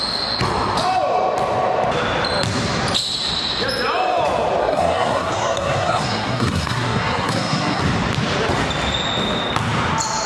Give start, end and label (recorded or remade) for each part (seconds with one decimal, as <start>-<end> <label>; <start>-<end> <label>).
0.0-4.6 recorded; 4.6-7.8 remade; 7.8-10.3 recorded